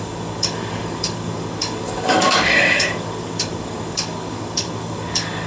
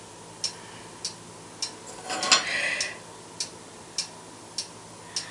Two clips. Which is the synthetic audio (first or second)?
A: first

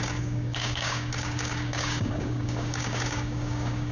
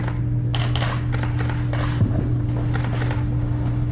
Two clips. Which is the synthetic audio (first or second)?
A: first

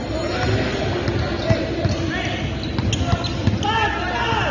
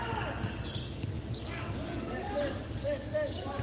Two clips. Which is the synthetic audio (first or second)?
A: second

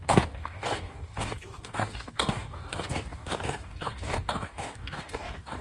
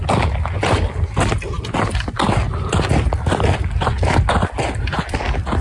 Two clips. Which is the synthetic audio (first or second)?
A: first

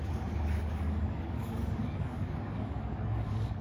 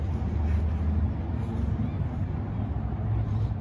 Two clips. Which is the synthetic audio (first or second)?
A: first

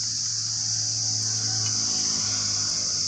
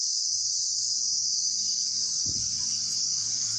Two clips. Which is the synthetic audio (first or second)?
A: second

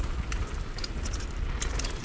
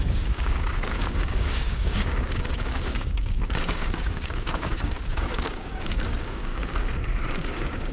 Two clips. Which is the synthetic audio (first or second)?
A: second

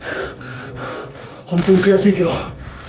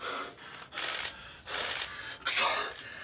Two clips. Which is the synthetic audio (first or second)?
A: first